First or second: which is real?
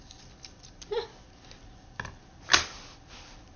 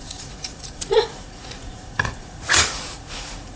first